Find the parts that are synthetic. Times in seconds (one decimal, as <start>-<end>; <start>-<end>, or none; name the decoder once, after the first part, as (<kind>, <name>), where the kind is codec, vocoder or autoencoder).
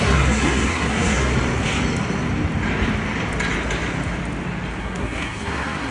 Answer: 0.0-1.3 (codec, SNAC); 4.8-5.9